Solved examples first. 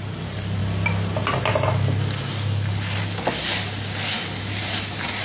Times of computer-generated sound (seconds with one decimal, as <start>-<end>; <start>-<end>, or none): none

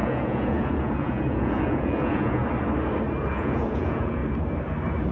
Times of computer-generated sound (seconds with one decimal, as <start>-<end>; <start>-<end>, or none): 0.0-2.4; 3.3-4.2

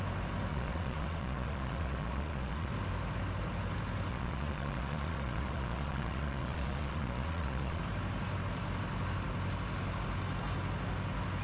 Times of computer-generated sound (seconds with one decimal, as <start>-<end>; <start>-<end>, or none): 0.5-2.7; 4.1-7.8

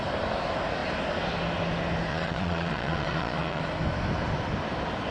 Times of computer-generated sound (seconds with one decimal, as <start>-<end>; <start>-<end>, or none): 2.1-3.6